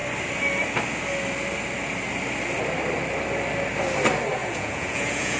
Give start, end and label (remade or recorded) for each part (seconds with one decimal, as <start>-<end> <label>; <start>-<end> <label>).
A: 0.0-4.4 recorded; 4.4-5.4 remade